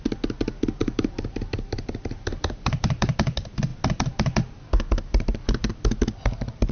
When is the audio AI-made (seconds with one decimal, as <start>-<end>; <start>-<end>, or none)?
0.8-3.1; 5.1-5.7